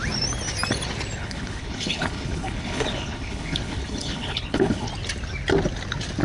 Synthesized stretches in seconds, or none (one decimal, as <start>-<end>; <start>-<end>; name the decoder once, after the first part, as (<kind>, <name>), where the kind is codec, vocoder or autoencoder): 1.2-4.9 (codec, HILCodec)

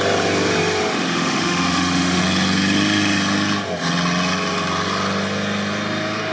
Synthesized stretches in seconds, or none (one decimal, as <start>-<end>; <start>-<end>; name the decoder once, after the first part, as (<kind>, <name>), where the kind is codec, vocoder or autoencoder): 0.9-2.2 (autoencoder, DAC-VAE)

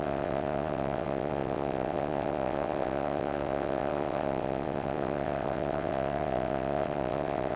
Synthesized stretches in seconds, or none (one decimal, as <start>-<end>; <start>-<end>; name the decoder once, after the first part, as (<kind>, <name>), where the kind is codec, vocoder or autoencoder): 0.0-7.6 (vocoder, WaveNeXt)